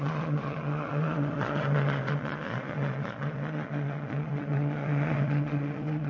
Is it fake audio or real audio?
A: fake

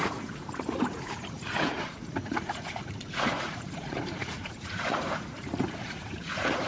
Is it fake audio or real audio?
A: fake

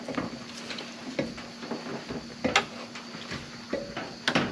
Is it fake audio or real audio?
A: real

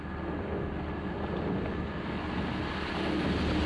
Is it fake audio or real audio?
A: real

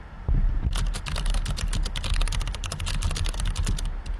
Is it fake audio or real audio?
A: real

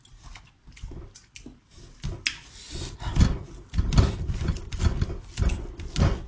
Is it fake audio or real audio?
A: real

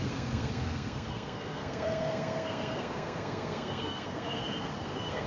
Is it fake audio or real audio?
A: fake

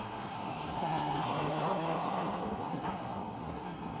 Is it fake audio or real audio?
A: fake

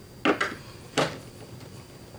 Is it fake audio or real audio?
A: real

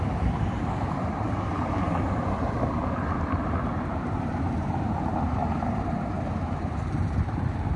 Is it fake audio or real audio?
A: fake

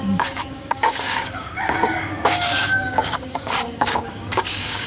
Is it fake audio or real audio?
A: fake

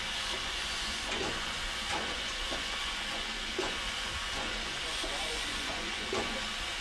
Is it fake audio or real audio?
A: fake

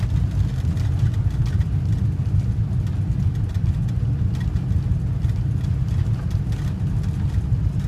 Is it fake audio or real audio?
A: real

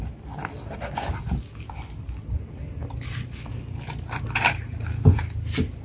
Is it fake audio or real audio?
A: real